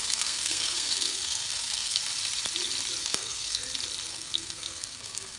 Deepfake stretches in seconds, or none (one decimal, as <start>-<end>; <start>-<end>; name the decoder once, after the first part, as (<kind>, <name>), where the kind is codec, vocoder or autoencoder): 0.0-2.0 (codec, SNAC); 3.0-3.6; 4.1-5.4